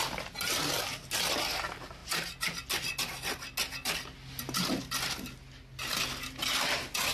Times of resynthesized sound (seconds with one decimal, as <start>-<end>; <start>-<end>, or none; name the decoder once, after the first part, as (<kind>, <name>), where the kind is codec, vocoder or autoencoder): none